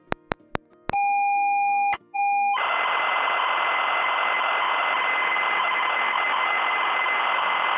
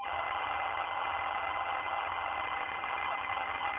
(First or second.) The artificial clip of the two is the second